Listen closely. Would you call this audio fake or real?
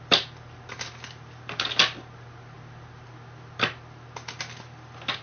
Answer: real